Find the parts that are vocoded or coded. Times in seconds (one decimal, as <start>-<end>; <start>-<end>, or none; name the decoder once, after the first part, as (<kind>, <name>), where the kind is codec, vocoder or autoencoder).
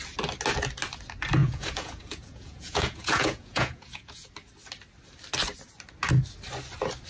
1.4-4.3 (vocoder, Vocos)